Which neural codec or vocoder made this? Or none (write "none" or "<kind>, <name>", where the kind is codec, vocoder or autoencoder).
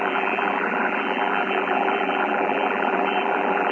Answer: vocoder, BigVGAN v2